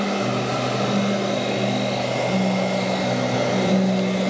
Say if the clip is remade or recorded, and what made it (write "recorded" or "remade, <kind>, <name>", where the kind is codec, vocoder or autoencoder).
recorded